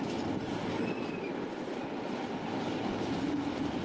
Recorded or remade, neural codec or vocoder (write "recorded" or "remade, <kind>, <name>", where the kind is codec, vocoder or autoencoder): recorded